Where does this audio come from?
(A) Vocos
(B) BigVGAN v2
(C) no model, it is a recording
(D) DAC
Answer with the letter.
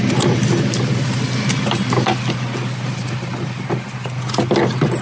C